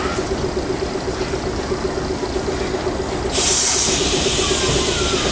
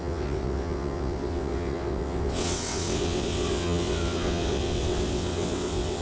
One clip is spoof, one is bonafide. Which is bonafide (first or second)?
first